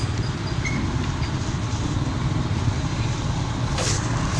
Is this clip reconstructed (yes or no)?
no